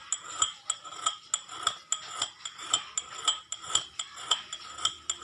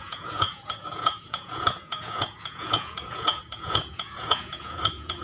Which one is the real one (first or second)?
first